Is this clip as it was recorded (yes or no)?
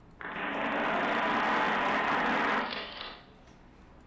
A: yes